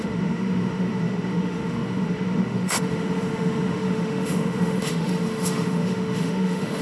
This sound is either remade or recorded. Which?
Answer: remade